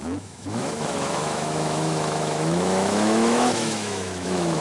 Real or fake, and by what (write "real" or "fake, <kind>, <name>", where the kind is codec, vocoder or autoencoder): fake, autoencoder, DAC-VAE